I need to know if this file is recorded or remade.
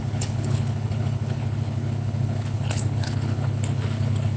remade